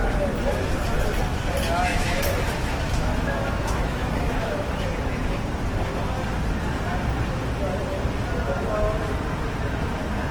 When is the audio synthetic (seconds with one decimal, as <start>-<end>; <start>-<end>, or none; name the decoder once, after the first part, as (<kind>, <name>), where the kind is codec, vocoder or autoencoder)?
1.9-4.8 (autoencoder, DAC-VAE)